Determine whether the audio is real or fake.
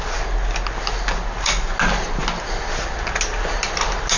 real